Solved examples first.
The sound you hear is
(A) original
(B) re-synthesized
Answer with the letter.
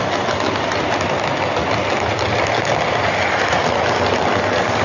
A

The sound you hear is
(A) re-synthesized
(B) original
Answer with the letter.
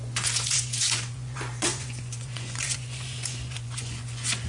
A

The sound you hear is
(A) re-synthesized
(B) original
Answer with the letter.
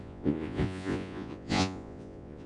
A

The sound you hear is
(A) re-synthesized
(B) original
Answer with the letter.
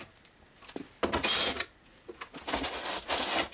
B